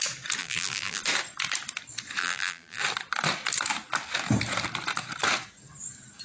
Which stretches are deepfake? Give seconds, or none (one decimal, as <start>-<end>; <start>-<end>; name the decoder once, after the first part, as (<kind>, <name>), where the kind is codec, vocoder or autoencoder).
0.4-1.0 (vocoder, BigVGAN v2); 2.2-2.8